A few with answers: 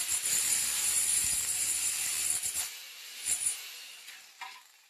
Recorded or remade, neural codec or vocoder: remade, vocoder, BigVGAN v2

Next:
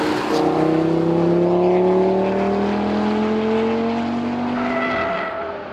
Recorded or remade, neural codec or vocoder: recorded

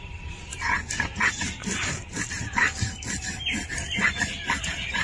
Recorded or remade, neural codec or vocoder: recorded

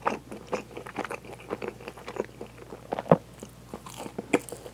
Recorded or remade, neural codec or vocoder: recorded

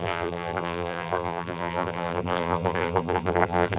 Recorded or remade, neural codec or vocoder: remade, vocoder, BigVGAN v2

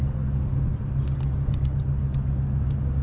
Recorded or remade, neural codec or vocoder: recorded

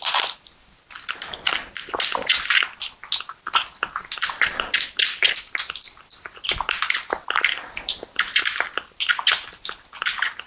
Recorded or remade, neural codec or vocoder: recorded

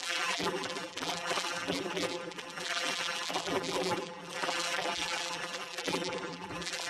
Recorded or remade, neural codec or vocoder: remade, vocoder, BigVGAN v2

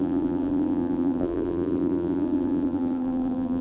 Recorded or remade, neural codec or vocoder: remade, vocoder, BigVGAN v2